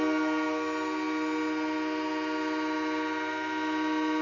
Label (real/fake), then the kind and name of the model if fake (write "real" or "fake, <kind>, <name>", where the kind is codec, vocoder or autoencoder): real